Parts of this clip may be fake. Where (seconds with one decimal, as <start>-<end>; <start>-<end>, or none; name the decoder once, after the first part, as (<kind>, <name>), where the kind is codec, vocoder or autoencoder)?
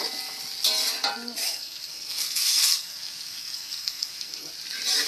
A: 1.4-4.5 (codec, SNAC)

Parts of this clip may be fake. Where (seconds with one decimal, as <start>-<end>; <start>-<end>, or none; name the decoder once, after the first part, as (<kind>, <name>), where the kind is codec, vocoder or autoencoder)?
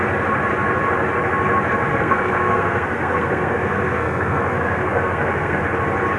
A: 1.9-5.6 (codec, SNAC)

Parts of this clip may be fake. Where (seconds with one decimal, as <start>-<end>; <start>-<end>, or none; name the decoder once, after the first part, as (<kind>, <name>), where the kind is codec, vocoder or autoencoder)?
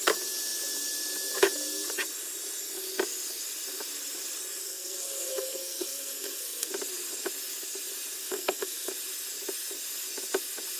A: 4.6-6.7 (codec, SNAC); 8.2-8.9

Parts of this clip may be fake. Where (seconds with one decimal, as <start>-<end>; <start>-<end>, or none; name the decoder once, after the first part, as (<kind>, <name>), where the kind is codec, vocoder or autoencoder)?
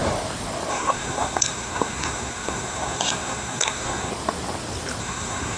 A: 0.7-4.1 (codec, SNAC); 5.0-5.6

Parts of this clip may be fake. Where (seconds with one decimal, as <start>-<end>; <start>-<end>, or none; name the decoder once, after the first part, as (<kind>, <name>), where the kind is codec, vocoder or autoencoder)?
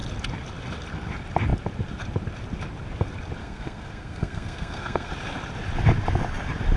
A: 3.4-5.1 (codec, SNAC)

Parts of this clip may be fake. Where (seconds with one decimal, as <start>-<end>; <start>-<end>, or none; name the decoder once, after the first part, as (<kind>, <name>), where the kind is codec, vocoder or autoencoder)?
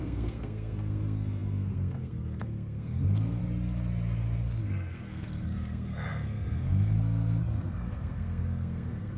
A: 0.0-3.4 (codec, SNAC); 4.6-9.2